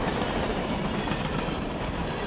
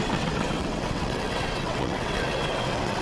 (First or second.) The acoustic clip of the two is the first